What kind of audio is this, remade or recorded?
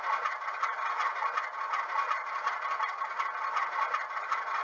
recorded